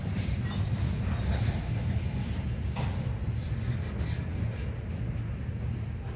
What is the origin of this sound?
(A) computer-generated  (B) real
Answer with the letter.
B